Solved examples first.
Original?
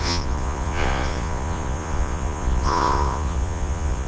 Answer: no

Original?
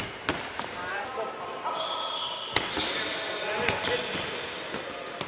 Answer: yes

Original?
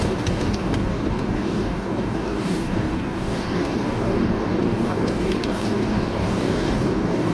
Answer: no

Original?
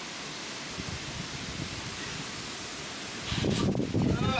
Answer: yes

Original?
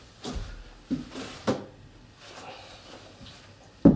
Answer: yes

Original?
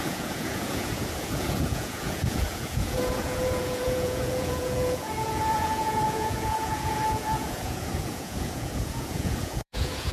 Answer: no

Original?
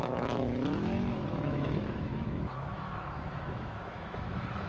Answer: no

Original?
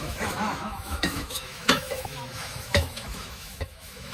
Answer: no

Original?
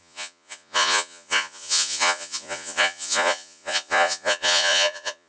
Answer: no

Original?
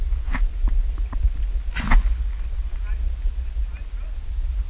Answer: yes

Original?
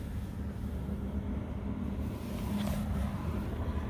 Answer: yes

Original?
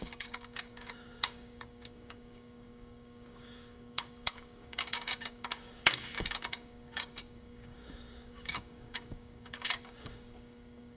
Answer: no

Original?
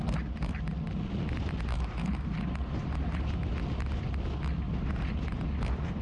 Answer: yes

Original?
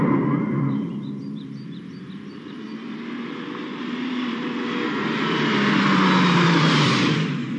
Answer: no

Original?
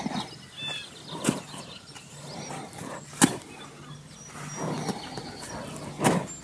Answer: yes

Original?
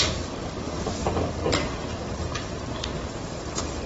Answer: no